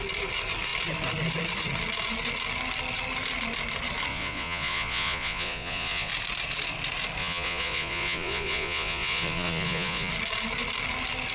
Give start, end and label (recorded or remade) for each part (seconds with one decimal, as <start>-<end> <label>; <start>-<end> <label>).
0.0-4.1 recorded; 4.1-6.1 remade; 6.1-7.2 recorded; 7.2-10.1 remade; 10.1-11.3 recorded